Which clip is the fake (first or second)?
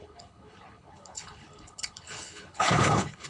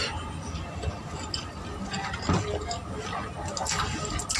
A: first